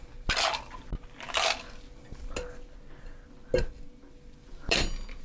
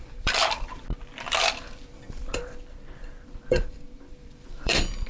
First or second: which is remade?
second